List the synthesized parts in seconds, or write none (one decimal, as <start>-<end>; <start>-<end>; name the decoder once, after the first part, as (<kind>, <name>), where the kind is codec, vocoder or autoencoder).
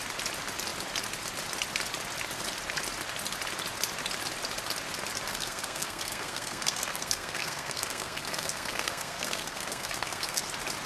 5.3-10.4 (codec, SNAC)